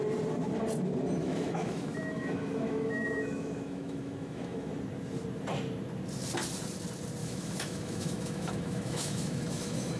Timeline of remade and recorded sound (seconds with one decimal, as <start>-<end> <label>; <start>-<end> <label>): 0.0-1.2 recorded; 1.2-4.7 remade; 4.7-7.2 recorded; 7.2-10.0 remade

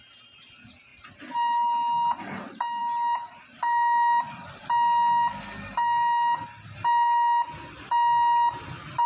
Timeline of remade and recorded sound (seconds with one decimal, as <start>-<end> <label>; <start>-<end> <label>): 0.0-9.1 recorded

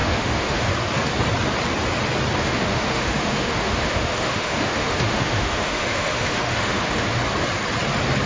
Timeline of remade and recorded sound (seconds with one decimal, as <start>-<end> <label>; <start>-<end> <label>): 0.0-0.7 remade; 0.7-2.4 recorded; 2.4-7.2 remade; 7.2-8.3 recorded

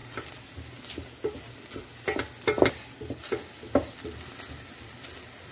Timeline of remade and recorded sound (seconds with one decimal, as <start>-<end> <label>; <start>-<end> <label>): 0.0-5.5 recorded

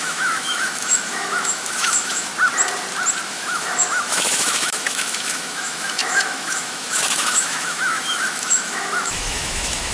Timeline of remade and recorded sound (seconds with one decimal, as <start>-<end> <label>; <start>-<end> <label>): 0.0-2.3 remade; 2.3-3.3 recorded; 3.3-9.9 remade

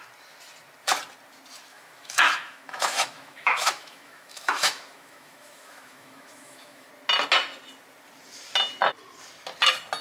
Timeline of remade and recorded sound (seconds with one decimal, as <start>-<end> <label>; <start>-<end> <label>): 0.0-1.7 recorded; 1.7-6.9 remade; 6.9-10.0 recorded